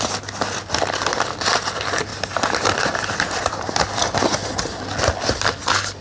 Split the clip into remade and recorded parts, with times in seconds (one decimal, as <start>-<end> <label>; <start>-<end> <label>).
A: 0.0-2.1 recorded; 2.1-3.4 remade; 3.4-6.0 recorded